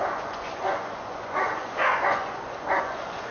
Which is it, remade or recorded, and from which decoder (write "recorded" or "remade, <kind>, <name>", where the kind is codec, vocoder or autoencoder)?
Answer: remade, vocoder, Vocos